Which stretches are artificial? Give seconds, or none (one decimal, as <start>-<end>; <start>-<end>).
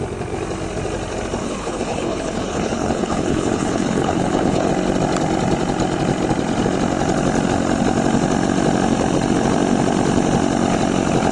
1.4-4.7